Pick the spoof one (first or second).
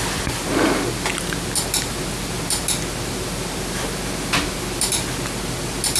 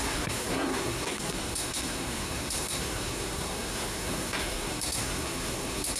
second